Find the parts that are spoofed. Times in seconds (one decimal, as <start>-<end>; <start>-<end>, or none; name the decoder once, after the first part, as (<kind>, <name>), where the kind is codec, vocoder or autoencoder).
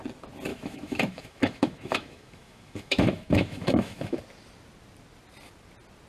0.5-4.2 (autoencoder, DAC-VAE)